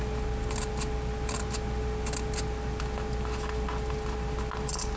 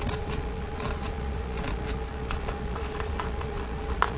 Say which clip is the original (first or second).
first